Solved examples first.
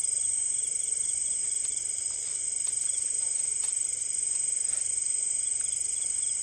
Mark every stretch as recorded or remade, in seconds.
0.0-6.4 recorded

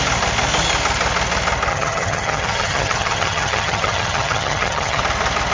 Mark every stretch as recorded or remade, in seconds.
0.0-1.7 recorded; 1.7-5.0 remade; 5.0-5.5 recorded

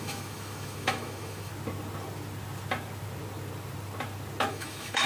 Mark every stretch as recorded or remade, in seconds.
0.0-1.5 remade; 1.5-4.5 recorded; 4.5-5.1 remade

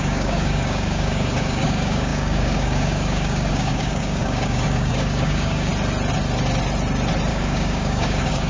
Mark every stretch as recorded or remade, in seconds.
0.0-5.7 remade; 5.7-7.3 recorded; 7.3-8.5 remade

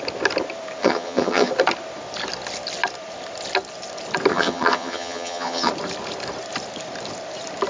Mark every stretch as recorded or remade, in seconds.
0.0-0.8 recorded; 0.8-1.5 remade; 1.5-4.3 recorded; 4.3-5.7 remade; 5.7-7.7 recorded

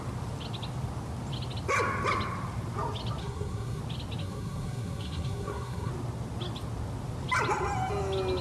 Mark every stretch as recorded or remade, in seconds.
0.0-3.2 recorded; 3.2-3.8 remade; 3.8-4.2 recorded; 4.2-5.9 remade; 5.9-8.4 recorded

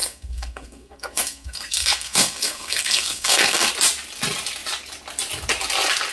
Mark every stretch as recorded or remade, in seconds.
0.0-3.7 remade; 3.7-6.1 recorded

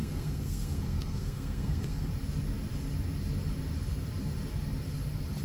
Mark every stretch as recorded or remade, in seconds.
0.0-2.1 remade; 2.1-5.4 recorded